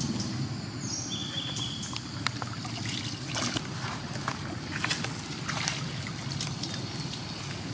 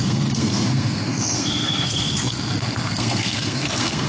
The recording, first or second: first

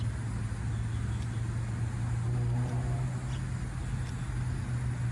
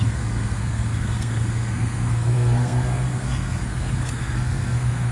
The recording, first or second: first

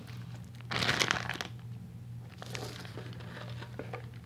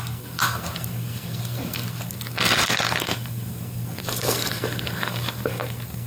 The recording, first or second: first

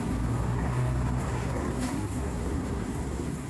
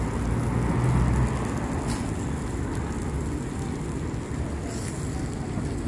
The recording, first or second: second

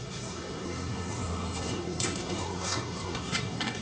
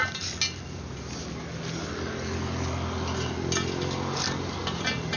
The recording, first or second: second